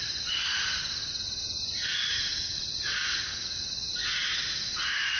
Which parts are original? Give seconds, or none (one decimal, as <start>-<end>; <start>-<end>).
0.0-1.8; 3.0-5.2